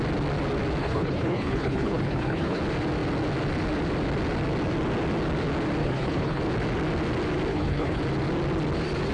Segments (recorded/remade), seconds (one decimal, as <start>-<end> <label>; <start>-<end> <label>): 0.0-0.8 recorded; 0.8-2.6 remade; 2.6-5.8 recorded; 5.8-6.4 remade; 6.4-7.5 recorded; 7.5-8.0 remade; 8.0-9.1 recorded